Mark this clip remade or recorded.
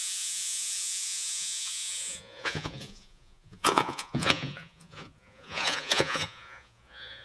remade